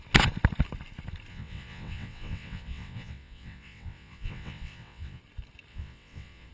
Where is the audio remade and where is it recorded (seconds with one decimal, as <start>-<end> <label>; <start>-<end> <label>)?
0.0-1.3 recorded; 1.3-5.2 remade; 5.2-5.7 recorded; 5.7-6.5 remade